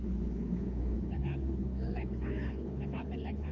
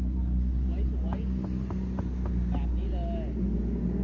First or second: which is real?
second